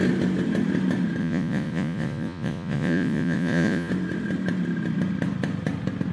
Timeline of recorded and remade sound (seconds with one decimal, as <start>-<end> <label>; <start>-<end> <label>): 0.0-1.2 recorded; 1.2-3.9 remade; 3.9-6.1 recorded